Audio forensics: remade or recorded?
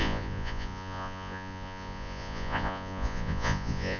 remade